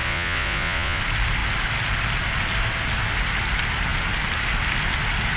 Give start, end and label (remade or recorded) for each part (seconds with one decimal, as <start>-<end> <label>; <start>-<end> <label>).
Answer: 0.0-1.0 remade; 1.0-5.4 recorded